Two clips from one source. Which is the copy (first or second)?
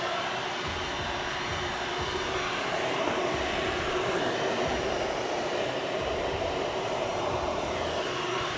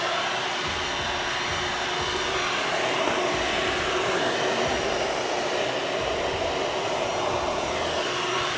first